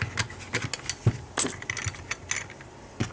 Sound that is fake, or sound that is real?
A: real